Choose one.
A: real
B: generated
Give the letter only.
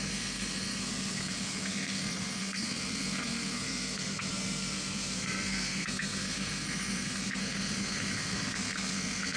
B